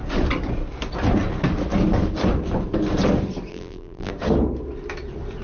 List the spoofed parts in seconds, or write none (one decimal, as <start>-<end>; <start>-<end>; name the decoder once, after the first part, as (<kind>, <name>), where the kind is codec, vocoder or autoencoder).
3.5-4.1 (vocoder, BigVGAN v2)